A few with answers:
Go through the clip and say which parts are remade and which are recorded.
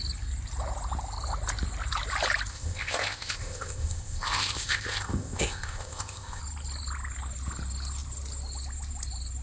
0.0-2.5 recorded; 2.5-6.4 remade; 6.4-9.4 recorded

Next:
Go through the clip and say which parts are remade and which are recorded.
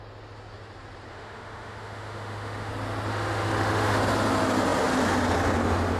0.0-1.1 recorded; 1.1-2.7 remade; 2.7-3.1 recorded; 3.1-4.0 remade; 4.0-6.0 recorded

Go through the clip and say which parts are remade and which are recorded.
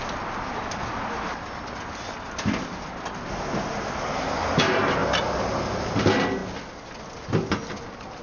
0.0-8.2 recorded